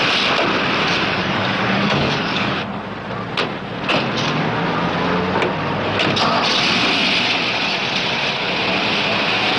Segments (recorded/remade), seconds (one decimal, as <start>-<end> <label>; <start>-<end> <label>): 0.0-1.1 recorded; 1.1-2.5 remade; 2.5-9.6 recorded